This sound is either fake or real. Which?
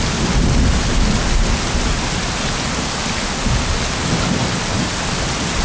real